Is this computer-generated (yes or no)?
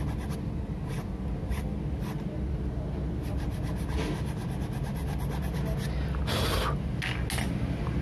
no